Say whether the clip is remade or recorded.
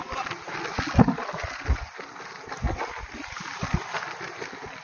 recorded